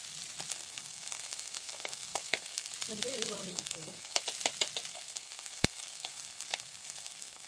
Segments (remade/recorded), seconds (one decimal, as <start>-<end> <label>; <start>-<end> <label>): 0.0-0.5 recorded; 0.5-2.7 remade; 2.7-3.5 recorded; 3.5-4.2 remade; 4.2-4.9 recorded; 4.9-7.5 remade